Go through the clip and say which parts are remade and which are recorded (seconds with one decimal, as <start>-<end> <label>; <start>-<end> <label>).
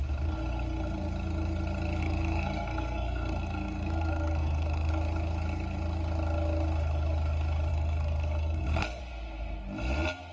0.0-2.0 recorded; 2.0-4.9 remade; 4.9-7.7 recorded; 7.7-9.0 remade; 9.0-10.3 recorded